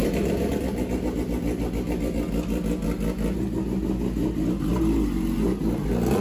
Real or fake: real